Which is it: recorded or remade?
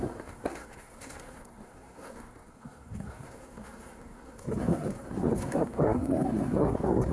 remade